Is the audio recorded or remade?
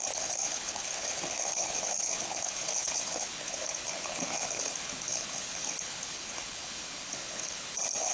remade